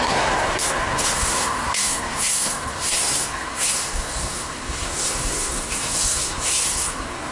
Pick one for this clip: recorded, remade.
remade